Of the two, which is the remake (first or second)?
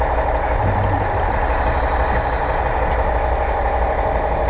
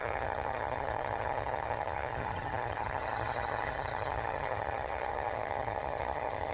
second